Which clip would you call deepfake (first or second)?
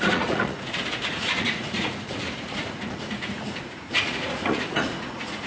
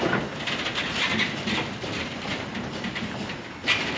first